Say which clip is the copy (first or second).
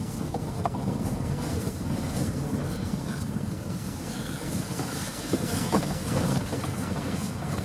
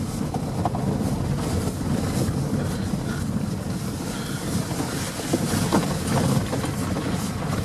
first